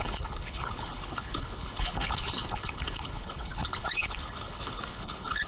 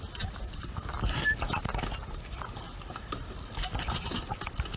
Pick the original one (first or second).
second